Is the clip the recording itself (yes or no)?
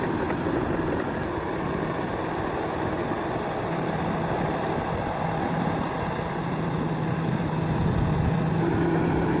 yes